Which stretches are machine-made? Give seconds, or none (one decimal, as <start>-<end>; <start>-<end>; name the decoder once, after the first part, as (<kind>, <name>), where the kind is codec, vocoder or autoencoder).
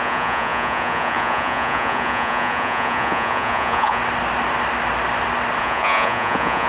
0.0-4.0 (vocoder, Vocos); 5.6-6.7